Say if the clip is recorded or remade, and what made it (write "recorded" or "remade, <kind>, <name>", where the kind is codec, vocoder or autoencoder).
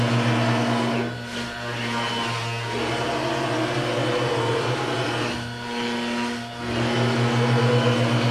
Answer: recorded